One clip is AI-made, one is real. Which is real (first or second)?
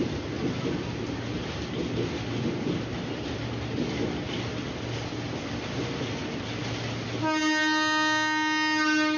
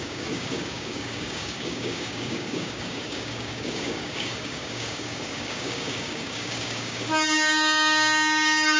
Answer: first